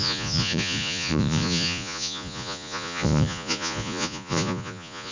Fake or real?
fake